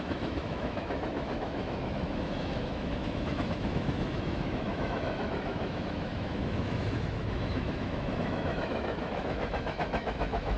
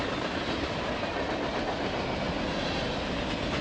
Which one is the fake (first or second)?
first